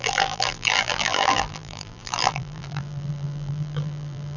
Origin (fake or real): fake